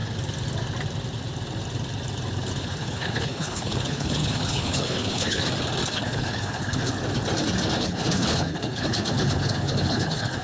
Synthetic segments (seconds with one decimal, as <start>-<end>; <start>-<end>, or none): 2.6-5.4; 5.9-6.9; 7.8-10.4